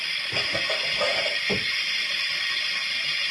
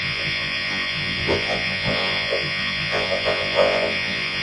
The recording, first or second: first